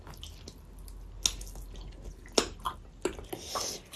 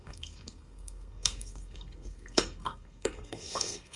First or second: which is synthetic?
second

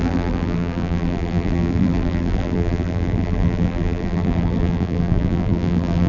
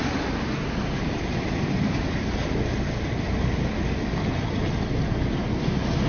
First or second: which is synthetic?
first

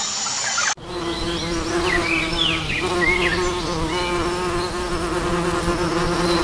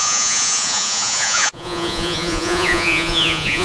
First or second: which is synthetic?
second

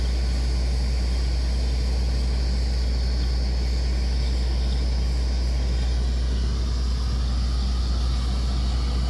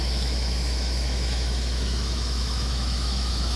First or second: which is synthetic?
second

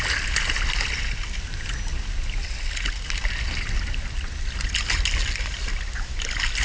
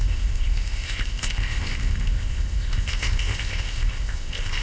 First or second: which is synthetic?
second